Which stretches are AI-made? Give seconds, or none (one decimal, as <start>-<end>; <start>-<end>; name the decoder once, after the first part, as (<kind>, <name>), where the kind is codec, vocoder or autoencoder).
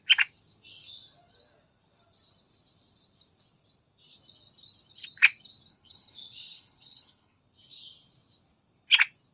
5.7-7.4 (codec, HILCodec)